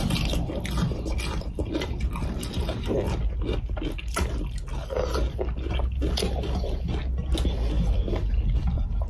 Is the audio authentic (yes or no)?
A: yes